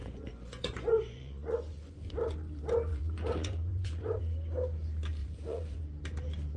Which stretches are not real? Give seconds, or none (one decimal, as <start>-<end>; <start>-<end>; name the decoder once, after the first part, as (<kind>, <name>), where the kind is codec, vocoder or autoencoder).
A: 0.0-1.9 (vocoder, Vocos); 2.9-4.2; 5.2-5.8